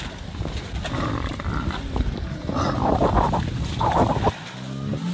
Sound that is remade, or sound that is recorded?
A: recorded